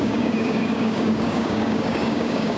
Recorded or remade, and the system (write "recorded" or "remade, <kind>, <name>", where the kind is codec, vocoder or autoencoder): remade, codec, DAC